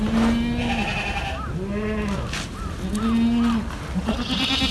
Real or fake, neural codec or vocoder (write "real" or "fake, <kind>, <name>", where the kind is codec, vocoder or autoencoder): real